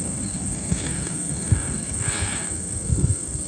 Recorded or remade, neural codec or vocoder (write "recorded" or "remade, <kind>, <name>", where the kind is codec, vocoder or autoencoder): remade, codec, SNAC